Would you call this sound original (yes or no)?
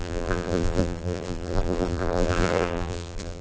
no